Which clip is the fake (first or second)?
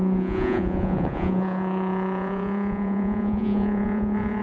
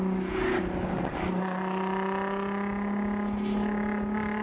first